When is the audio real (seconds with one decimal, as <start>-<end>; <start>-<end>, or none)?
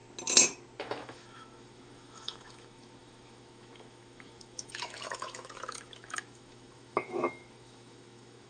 0.0-0.8